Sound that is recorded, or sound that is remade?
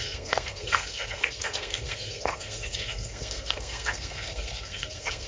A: remade